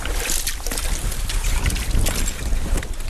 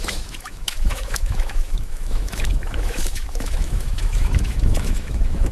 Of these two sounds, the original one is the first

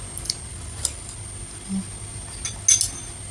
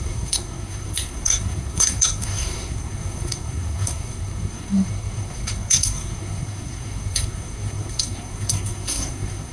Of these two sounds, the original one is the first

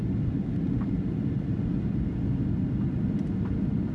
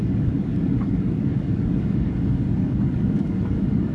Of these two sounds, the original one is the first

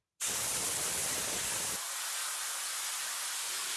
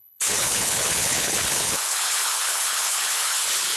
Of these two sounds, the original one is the first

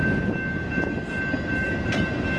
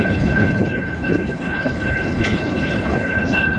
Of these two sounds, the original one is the first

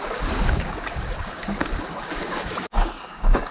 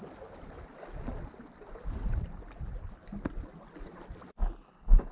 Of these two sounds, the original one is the second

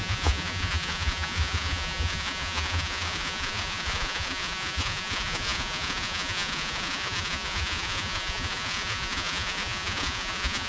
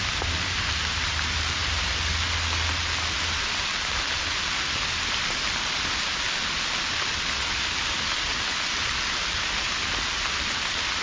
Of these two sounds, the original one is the second